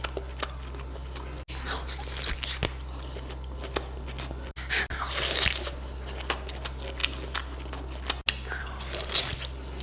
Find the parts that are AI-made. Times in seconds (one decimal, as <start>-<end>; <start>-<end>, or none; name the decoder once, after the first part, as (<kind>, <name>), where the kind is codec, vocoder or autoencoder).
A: none